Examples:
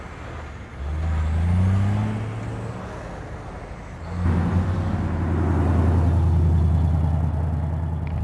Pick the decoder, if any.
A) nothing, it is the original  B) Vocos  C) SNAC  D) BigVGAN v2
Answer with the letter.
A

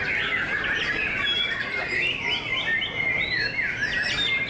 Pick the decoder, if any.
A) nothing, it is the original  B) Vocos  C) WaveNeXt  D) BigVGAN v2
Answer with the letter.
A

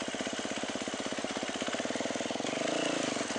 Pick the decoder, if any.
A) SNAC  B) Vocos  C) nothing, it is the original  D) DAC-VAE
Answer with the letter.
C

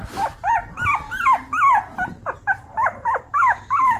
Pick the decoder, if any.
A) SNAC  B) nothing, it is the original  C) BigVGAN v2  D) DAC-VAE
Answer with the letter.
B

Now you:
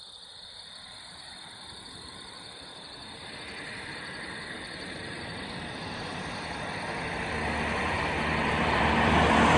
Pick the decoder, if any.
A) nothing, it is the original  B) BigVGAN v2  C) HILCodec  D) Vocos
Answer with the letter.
B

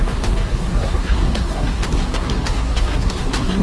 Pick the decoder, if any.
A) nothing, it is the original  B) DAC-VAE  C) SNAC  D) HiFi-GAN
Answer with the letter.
C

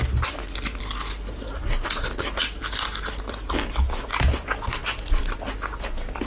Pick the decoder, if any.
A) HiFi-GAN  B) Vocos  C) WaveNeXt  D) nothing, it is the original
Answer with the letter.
D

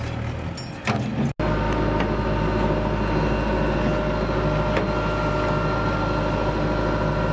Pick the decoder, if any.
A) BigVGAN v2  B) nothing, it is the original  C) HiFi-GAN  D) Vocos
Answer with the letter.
B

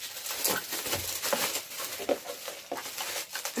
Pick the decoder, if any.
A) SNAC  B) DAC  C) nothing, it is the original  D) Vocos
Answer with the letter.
C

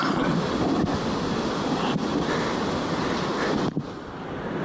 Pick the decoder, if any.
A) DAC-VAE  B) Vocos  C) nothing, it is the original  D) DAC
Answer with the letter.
C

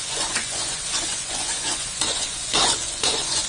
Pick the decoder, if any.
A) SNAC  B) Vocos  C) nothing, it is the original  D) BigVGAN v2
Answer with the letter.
B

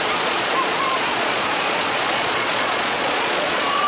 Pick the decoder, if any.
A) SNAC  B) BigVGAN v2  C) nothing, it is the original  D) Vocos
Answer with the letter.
D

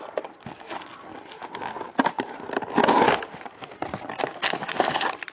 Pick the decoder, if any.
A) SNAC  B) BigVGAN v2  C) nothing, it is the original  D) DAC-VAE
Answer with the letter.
C